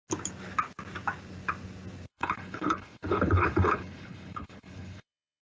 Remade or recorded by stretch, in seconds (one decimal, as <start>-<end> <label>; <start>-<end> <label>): 0.0-2.1 recorded; 2.1-5.4 remade